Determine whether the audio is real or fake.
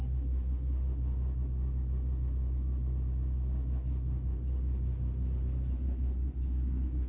real